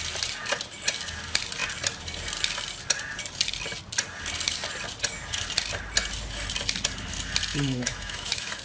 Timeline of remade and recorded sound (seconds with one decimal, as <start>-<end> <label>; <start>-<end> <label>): 0.0-7.5 recorded; 7.5-8.6 remade